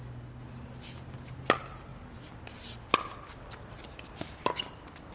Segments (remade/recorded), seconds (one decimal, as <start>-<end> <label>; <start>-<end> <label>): 0.0-5.1 recorded